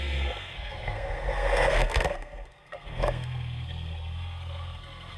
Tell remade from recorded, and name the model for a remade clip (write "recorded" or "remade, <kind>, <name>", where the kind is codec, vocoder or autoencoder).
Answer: remade, codec, SNAC